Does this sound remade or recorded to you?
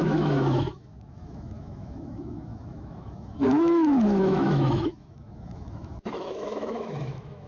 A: remade